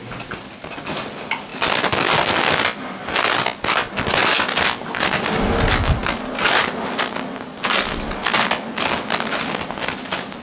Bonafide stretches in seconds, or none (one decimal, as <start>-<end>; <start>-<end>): 0.0-10.4